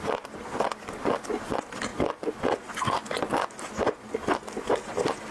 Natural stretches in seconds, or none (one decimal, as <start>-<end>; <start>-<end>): 0.0-5.3